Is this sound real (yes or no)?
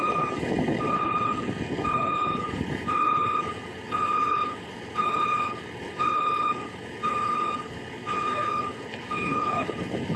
no